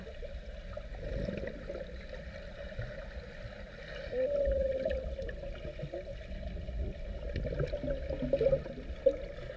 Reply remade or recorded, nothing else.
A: recorded